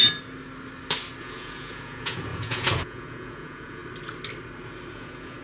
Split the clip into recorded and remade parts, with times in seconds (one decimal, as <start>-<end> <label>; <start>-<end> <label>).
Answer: 0.0-1.2 recorded; 1.2-3.8 remade; 3.8-4.9 recorded; 4.9-5.4 remade

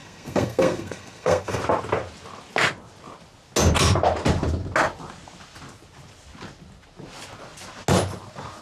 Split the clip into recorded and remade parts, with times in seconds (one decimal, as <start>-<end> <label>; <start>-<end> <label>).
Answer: 0.0-1.6 remade; 1.6-8.6 recorded

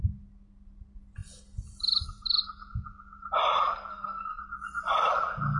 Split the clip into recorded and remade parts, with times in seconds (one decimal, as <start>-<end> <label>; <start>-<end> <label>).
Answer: 0.0-3.9 recorded; 3.9-4.4 remade; 4.4-5.6 recorded

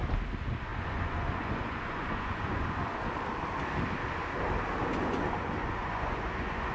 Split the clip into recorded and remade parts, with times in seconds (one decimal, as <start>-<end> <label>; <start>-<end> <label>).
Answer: 0.0-0.7 recorded; 0.7-2.9 remade; 2.9-4.9 recorded; 4.9-6.7 remade